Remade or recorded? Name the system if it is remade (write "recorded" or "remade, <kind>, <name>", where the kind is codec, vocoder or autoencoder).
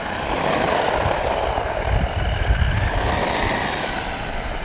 recorded